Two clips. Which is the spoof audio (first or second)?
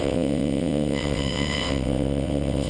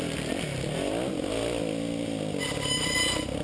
first